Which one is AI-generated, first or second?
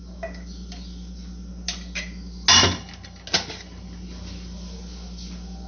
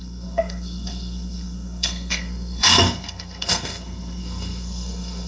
second